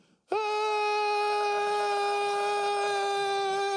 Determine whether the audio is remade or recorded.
recorded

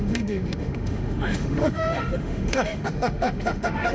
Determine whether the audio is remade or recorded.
remade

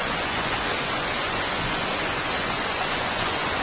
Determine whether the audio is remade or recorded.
remade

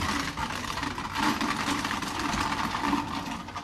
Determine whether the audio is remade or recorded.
recorded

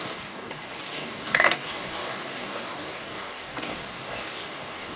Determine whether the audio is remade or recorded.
remade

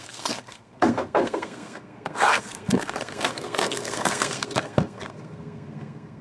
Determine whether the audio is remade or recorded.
remade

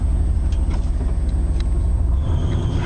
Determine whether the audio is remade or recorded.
recorded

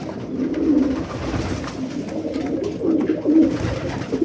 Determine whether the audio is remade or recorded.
recorded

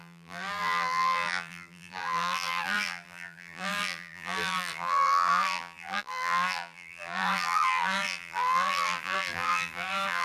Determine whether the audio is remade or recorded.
remade